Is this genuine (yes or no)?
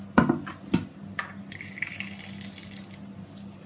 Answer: yes